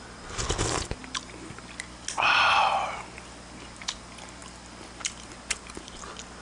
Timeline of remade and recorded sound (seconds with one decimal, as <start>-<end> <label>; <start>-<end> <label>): 0.0-6.4 recorded